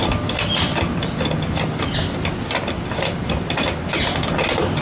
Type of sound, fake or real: real